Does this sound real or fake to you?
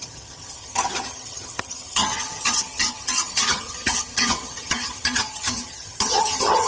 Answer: fake